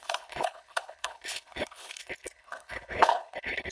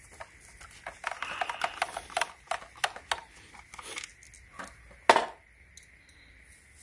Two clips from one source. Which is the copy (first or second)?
first